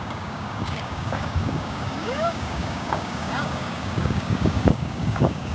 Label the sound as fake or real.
fake